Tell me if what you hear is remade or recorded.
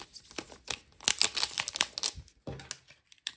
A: recorded